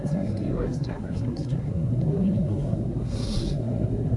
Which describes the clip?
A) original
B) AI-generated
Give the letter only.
B